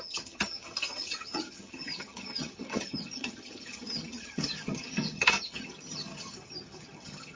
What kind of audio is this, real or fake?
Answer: fake